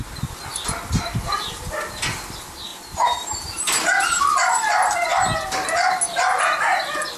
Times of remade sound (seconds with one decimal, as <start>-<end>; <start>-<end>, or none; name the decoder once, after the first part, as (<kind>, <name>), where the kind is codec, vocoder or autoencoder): none